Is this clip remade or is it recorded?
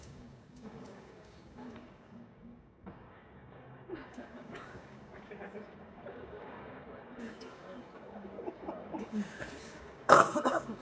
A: remade